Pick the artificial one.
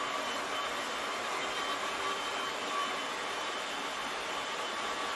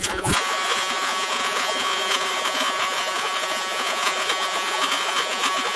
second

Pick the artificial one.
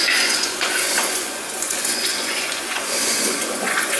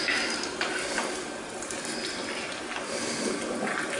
first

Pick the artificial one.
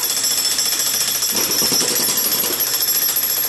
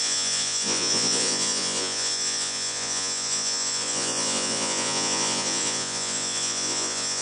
second